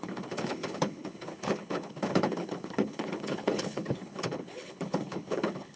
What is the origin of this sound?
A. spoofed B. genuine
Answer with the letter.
A